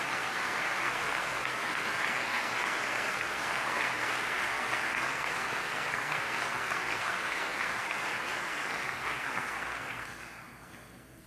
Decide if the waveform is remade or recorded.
remade